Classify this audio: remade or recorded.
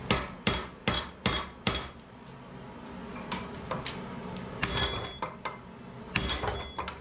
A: recorded